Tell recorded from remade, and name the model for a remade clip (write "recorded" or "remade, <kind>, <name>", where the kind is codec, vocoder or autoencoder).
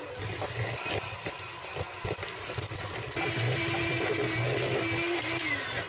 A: recorded